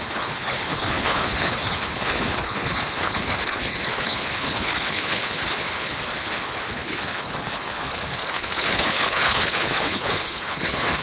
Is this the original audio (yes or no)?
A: no